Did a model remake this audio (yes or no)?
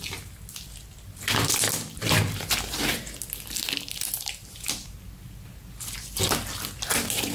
no